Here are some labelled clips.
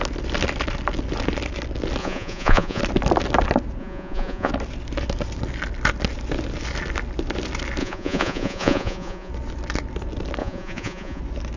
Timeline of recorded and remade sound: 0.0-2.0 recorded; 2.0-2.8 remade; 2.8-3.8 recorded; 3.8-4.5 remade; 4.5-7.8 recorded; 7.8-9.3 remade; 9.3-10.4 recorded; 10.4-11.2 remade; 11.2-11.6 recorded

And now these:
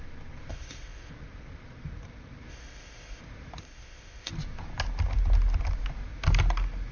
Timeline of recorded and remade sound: 0.0-0.5 recorded; 0.5-1.1 remade; 1.1-2.5 recorded; 2.5-3.2 remade; 3.2-3.6 recorded; 3.6-4.3 remade; 4.3-6.9 recorded

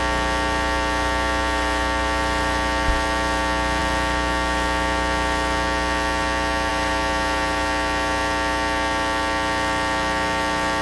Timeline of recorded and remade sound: 0.0-10.8 recorded